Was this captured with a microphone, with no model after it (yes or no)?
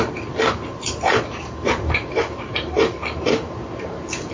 no